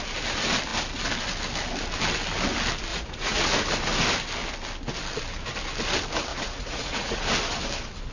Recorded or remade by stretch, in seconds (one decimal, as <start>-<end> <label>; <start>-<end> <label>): 0.0-2.9 recorded; 2.9-3.4 remade; 3.4-6.3 recorded; 6.3-7.2 remade; 7.2-8.1 recorded

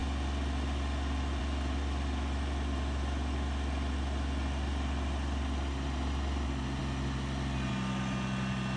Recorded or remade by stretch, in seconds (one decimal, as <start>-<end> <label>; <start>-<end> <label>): 0.0-8.8 recorded

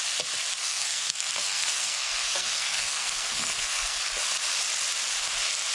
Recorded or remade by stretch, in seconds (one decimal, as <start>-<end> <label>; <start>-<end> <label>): 0.0-0.6 recorded; 0.6-4.0 remade; 4.0-5.7 recorded

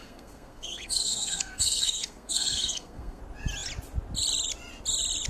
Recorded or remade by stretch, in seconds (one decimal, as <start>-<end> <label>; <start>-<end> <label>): 0.0-3.2 remade; 3.2-5.3 recorded

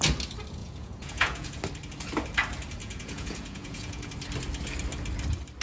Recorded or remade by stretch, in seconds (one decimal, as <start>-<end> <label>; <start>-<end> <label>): 0.0-0.6 recorded; 0.6-1.6 remade; 1.6-2.8 recorded; 2.8-4.1 remade; 4.1-5.6 recorded

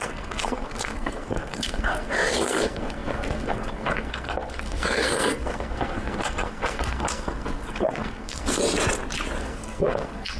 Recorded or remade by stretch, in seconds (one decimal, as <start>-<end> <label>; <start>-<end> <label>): 0.0-8.6 remade; 8.6-9.4 recorded; 9.4-10.4 remade

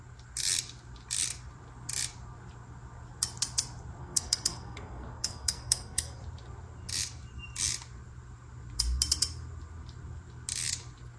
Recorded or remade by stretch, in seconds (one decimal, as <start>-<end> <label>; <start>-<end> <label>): 0.0-4.0 recorded; 4.0-6.2 remade; 6.2-11.2 recorded